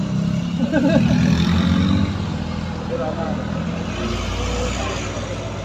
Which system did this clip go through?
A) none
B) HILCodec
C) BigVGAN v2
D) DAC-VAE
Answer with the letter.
A